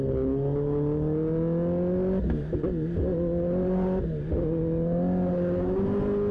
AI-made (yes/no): no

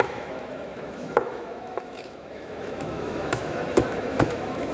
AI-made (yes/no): yes